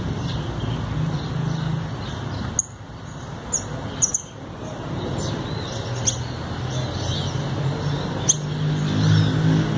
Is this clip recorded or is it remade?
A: recorded